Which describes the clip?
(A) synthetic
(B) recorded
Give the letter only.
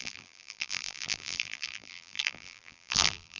A